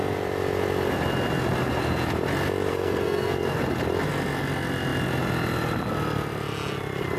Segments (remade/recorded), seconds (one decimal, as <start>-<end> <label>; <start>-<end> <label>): 0.0-2.7 recorded; 2.7-3.6 remade; 3.6-7.2 recorded